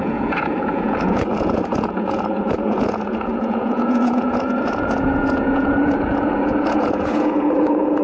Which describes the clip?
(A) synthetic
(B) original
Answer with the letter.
A